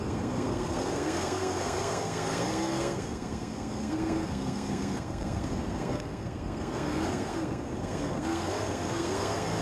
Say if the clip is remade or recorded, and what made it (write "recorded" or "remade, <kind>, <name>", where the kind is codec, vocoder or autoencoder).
remade, codec, SNAC